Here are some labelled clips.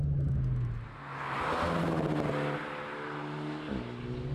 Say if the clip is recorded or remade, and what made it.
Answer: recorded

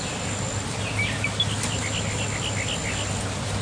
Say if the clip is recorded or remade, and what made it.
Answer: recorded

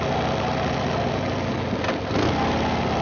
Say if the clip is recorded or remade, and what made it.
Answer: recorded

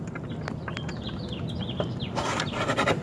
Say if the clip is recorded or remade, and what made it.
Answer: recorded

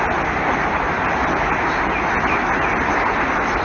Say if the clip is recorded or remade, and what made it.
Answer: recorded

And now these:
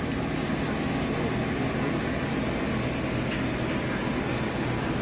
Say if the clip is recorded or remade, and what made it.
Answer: recorded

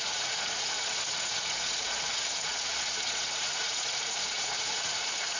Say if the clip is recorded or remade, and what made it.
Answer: remade, vocoder, Vocos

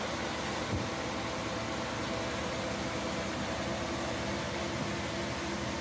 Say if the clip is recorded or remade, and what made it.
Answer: recorded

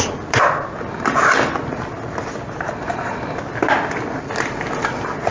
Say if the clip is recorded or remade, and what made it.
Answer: recorded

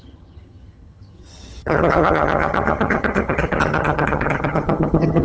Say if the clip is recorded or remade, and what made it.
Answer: remade, vocoder, HiFi-GAN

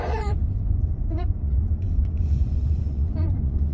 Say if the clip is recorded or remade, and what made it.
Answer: remade, vocoder, Vocos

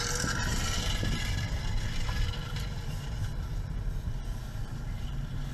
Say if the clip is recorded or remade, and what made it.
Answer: remade, vocoder, BigVGAN v2